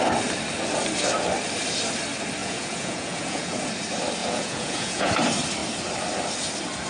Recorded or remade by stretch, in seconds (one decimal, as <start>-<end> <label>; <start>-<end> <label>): 0.0-2.4 recorded; 2.4-3.7 remade; 3.7-4.2 recorded; 4.2-5.1 remade; 5.1-6.9 recorded